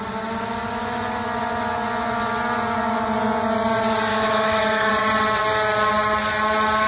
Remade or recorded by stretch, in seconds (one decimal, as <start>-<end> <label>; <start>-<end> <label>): 0.0-4.1 recorded; 4.1-4.9 remade; 4.9-6.9 recorded